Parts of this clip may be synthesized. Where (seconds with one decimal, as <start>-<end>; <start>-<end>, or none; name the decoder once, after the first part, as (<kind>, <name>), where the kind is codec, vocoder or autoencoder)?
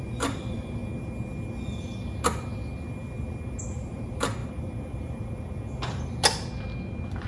0.0-0.8 (vocoder, BigVGAN v2); 3.6-4.4